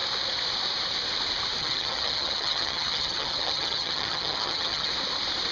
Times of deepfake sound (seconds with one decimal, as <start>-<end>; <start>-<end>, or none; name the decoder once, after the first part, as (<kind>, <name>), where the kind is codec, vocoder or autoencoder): 1.6-4.9 (vocoder, HiFi-GAN)